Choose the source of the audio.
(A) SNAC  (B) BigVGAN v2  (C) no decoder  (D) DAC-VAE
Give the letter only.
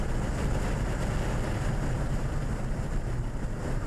C